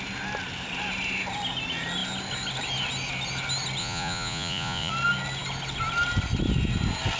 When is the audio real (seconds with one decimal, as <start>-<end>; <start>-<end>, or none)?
0.0-3.8; 4.9-7.2